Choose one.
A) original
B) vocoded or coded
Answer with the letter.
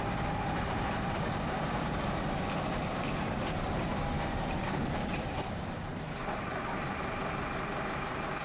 B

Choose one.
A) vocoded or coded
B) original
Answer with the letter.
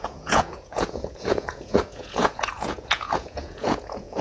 A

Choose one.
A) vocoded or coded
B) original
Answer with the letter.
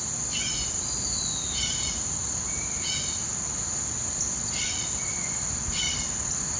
B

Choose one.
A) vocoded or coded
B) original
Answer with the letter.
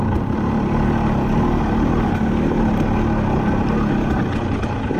B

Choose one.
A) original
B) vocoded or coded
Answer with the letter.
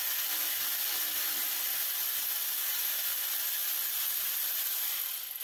A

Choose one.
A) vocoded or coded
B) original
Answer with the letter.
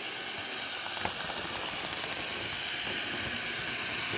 B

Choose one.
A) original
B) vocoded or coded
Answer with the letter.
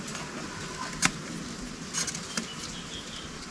A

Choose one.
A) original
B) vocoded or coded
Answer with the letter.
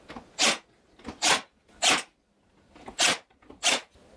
A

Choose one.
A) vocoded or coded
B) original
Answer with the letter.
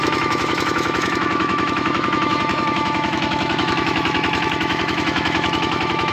A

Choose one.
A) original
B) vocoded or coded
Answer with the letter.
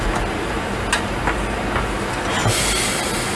A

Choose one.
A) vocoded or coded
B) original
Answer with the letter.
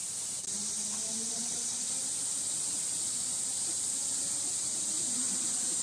A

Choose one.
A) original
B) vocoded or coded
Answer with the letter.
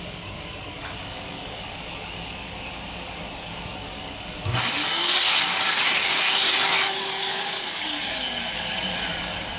B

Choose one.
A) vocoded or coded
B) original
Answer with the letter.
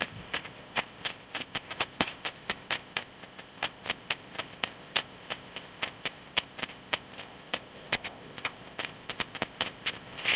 A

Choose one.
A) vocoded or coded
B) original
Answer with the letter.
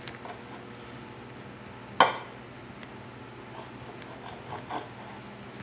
B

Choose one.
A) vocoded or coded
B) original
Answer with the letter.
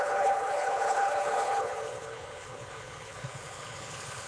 A